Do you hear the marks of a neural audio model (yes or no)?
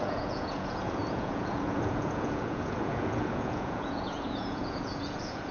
yes